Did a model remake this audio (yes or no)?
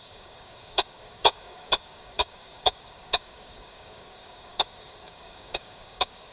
yes